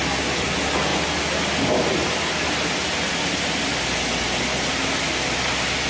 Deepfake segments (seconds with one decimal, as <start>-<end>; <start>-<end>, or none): none